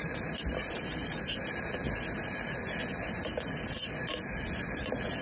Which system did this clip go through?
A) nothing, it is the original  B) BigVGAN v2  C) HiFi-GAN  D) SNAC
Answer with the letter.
A